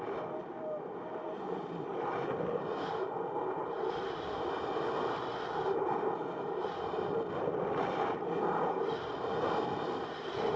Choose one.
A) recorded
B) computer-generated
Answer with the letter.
A